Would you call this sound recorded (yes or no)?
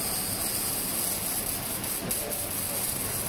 yes